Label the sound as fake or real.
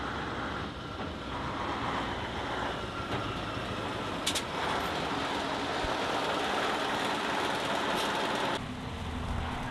real